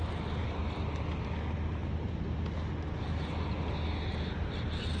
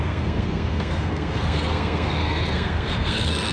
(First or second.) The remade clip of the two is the second